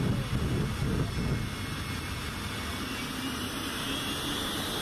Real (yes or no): yes